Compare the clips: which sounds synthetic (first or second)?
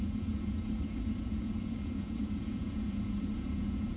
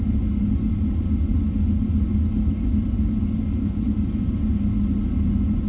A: first